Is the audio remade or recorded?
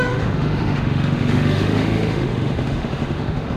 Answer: remade